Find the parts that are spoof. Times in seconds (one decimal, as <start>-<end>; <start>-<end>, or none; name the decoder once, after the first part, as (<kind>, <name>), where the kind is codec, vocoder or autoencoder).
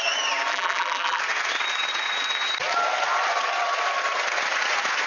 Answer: 0.5-1.2 (vocoder, BigVGAN v2)